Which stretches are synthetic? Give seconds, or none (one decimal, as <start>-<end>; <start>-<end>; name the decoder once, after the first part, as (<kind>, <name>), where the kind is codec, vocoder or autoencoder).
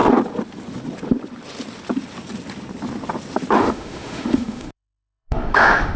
3.6-6.0 (autoencoder, DAC-VAE)